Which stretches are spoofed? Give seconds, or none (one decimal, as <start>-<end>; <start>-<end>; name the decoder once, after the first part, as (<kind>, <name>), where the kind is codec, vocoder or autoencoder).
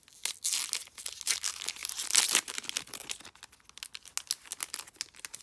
none